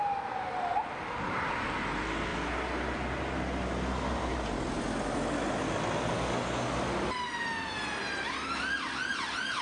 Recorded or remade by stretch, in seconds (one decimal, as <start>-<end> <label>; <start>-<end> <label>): 0.0-2.3 recorded; 2.3-3.2 remade; 3.2-4.3 recorded; 4.3-5.7 remade; 5.7-9.6 recorded